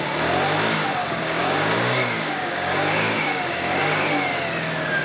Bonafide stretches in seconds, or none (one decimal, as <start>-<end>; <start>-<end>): 0.0-1.0; 4.0-5.0